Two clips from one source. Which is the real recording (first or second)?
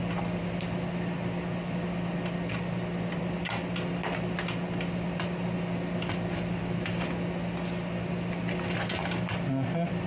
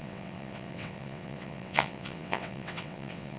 first